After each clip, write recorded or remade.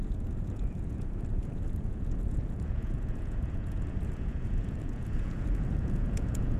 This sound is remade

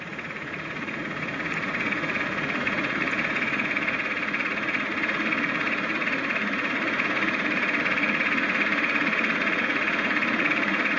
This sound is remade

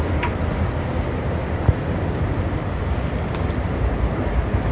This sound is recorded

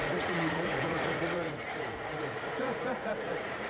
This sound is remade